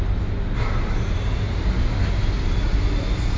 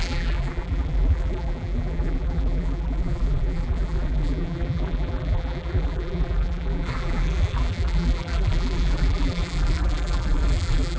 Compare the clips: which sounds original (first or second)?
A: first